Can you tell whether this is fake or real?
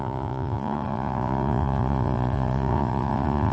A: fake